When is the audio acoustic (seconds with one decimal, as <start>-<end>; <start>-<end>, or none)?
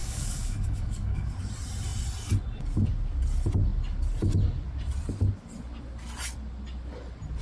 1.3-7.4